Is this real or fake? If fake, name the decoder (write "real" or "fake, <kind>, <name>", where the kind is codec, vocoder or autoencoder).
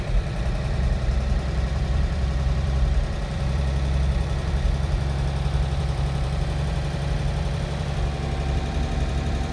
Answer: fake, vocoder, BigVGAN v2